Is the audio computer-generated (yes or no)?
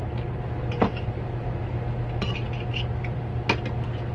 no